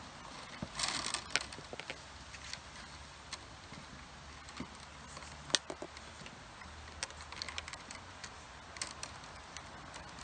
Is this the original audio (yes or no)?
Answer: yes